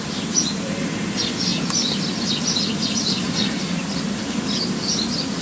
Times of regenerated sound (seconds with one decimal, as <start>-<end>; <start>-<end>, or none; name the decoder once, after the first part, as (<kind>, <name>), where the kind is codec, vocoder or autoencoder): none

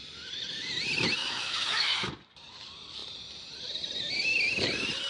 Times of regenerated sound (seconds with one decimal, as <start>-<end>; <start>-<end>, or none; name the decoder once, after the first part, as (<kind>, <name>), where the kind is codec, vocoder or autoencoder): 1.2-2.1 (autoencoder, DAC-VAE)

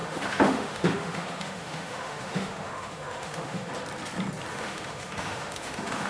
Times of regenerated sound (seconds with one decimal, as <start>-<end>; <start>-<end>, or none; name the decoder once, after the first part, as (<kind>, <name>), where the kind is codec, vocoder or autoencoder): 0.0-3.7 (autoencoder, DAC-VAE); 4.5-6.1

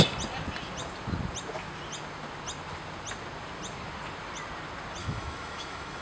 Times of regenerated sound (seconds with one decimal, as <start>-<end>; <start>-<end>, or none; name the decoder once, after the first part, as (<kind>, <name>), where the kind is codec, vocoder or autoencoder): 5.0-6.0 (autoencoder, DAC-VAE)

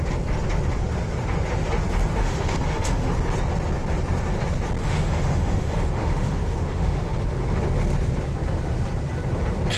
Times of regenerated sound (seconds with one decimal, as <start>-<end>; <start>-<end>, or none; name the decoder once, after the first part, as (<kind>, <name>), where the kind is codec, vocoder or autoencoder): 2.2-3.1 (autoencoder, DAC-VAE); 4.8-7.1

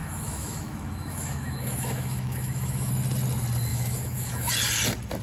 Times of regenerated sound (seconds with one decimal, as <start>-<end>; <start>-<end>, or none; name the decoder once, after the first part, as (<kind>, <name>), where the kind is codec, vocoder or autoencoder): 0.0-2.9 (autoencoder, DAC-VAE); 3.7-4.5